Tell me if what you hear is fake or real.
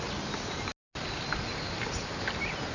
real